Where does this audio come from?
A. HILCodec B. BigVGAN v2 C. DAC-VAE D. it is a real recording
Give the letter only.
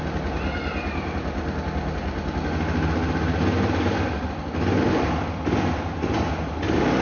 D